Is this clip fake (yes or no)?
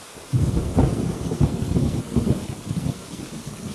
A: yes